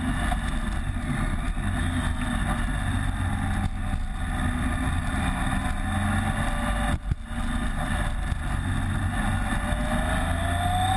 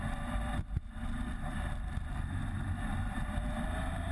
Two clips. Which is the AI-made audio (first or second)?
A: second